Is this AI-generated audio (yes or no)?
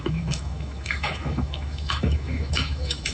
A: yes